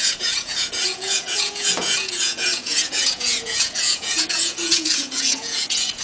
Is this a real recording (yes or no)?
no